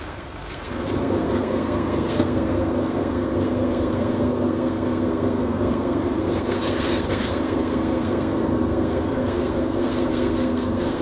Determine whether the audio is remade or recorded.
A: remade